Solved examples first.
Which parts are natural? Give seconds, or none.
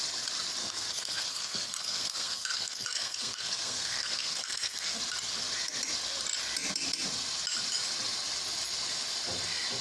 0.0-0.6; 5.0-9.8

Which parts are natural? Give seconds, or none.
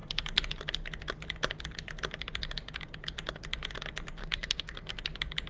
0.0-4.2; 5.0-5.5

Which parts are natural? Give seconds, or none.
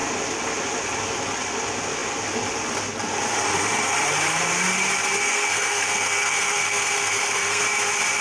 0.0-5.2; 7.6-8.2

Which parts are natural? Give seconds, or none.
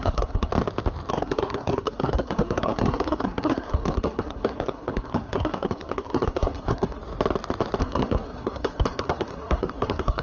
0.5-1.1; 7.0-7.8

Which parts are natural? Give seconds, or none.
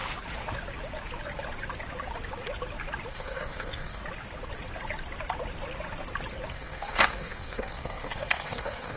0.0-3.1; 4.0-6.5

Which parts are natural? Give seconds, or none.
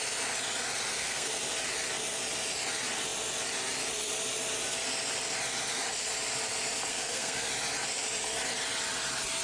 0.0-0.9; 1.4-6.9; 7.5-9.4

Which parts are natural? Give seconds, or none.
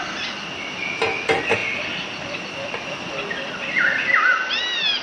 0.0-5.0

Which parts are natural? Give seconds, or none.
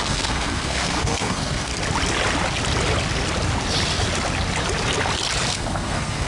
1.7-5.5